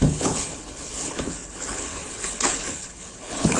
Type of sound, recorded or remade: remade